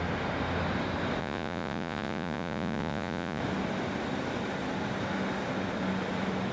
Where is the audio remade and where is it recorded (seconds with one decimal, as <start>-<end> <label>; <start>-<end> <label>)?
0.0-1.2 recorded; 1.2-3.4 remade; 3.4-6.5 recorded